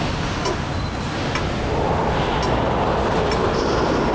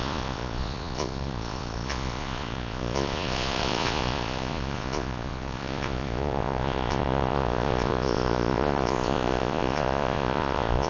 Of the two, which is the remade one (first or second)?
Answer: second